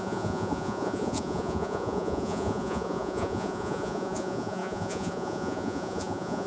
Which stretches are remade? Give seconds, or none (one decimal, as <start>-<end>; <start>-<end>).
0.0-6.5

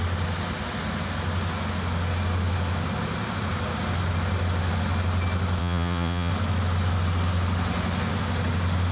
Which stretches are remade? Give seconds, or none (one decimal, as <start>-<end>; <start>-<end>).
5.6-6.3

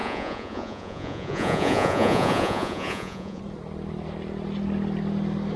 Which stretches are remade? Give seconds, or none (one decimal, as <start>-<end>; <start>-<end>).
0.0-3.4

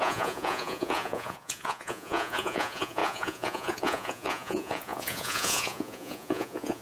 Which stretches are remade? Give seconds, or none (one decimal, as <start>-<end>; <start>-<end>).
0.0-6.8

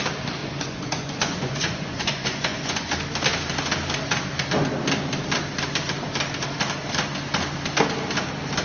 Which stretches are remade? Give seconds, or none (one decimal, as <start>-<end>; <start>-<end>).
0.4-2.9

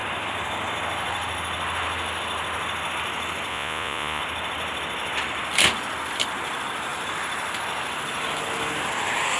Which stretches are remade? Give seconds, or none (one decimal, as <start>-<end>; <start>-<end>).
3.5-4.2

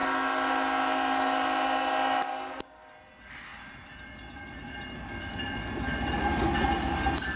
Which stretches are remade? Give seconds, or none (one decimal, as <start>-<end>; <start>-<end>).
none

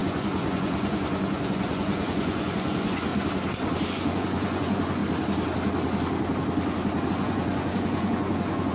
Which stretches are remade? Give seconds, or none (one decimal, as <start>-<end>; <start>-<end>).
0.0-3.1; 3.9-5.0; 7.1-8.7